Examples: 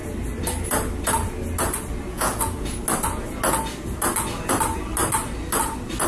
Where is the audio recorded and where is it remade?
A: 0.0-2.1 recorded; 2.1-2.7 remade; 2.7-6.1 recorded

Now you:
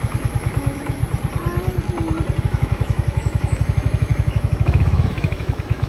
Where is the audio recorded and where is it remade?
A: 0.0-1.0 remade; 1.0-2.4 recorded; 2.4-5.9 remade

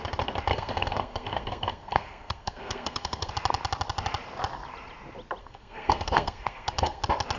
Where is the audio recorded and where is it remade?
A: 0.0-0.5 recorded; 0.5-3.3 remade; 3.3-5.4 recorded; 5.4-7.0 remade; 7.0-7.4 recorded

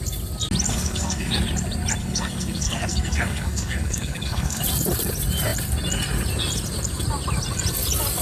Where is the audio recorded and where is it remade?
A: 0.0-0.7 recorded; 0.7-1.3 remade; 1.3-2.0 recorded; 2.0-4.6 remade; 4.6-8.2 recorded

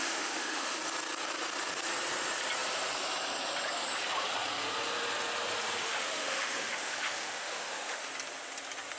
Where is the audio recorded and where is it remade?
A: 0.0-0.8 remade; 0.8-5.8 recorded; 5.8-8.1 remade; 8.1-9.0 recorded

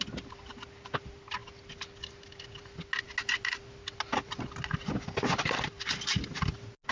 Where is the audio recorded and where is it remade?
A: 0.0-6.9 recorded